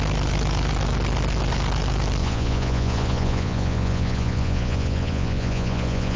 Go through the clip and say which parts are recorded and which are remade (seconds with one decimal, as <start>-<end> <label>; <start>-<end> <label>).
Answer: 0.0-2.2 recorded; 2.2-6.2 remade